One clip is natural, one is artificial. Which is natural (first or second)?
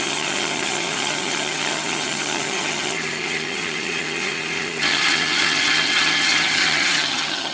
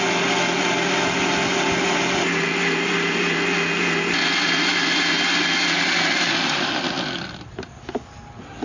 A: second